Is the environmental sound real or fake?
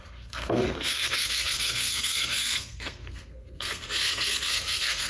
fake